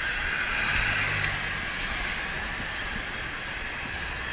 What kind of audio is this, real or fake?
real